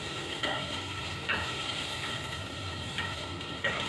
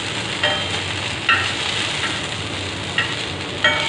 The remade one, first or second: first